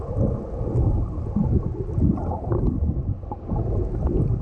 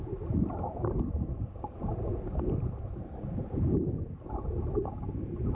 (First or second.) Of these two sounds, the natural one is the first